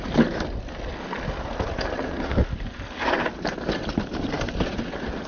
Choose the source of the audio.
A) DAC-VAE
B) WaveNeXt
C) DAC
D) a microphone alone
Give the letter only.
D